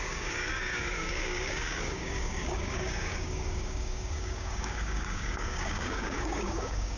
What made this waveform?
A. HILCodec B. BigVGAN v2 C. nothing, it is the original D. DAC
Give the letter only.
D